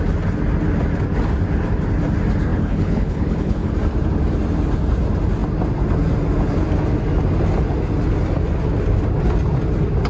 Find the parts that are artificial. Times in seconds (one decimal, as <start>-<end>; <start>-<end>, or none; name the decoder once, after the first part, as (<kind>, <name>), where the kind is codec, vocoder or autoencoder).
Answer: 2.5-3.7 (codec, HILCodec)